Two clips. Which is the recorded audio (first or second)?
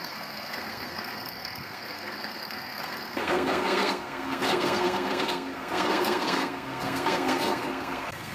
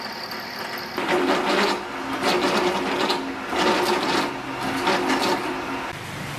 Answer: second